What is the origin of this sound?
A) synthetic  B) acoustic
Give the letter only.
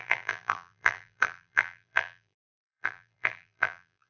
A